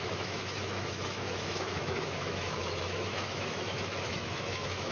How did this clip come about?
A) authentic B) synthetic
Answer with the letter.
B